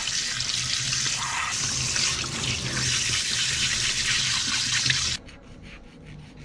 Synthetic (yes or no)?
no